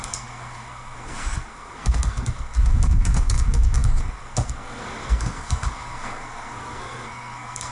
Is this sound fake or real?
fake